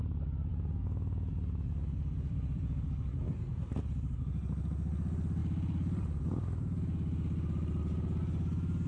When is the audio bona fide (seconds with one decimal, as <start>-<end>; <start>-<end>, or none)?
0.0-0.5; 1.3-8.9